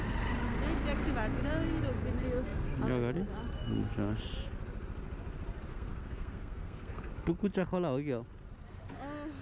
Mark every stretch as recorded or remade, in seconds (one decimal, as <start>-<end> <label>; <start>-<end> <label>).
0.0-5.7 recorded; 5.7-7.1 remade; 7.1-9.4 recorded